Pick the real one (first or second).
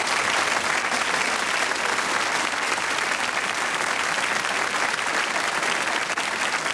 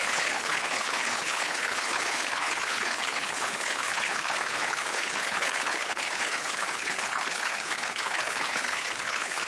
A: first